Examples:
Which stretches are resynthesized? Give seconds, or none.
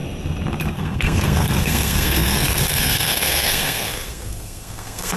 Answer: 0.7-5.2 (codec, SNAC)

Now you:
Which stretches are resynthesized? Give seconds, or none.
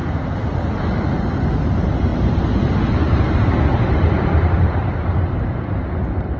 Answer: 3.0-5.4 (vocoder, BigVGAN v2)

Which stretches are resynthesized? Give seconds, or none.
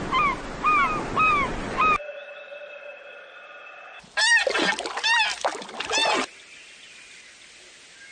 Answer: none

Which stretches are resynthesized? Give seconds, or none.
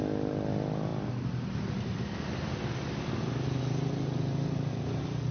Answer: none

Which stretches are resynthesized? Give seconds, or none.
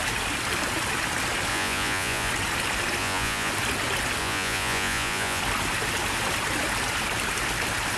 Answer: 1.5-2.3 (vocoder, Vocos); 3.0-3.5; 4.2-5.4